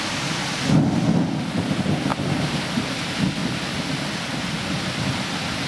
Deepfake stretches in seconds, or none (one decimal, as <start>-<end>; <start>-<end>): none

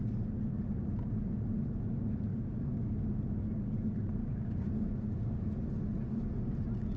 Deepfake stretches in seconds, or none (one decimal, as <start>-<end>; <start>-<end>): 2.3-3.2; 4.2-5.4

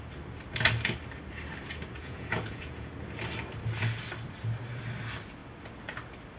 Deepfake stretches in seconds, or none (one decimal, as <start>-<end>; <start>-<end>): 2.0-2.9

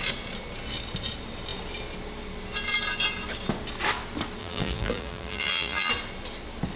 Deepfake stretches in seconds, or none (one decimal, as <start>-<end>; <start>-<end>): 4.4-5.9